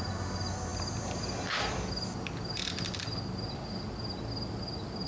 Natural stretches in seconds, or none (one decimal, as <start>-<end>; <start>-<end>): 0.0-5.1